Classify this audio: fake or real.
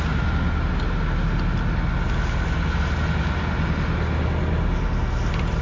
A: real